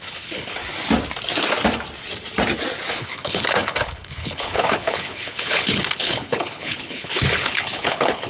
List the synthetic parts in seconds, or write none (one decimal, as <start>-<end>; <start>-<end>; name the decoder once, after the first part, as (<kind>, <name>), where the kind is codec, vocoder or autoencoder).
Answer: 0.0-0.6 (codec, HILCodec); 2.9-8.3